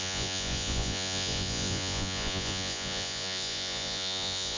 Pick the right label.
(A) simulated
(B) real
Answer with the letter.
A